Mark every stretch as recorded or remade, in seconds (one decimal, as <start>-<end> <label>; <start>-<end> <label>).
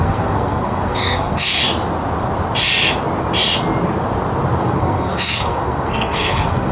0.0-1.6 remade; 1.6-4.6 recorded; 4.6-6.7 remade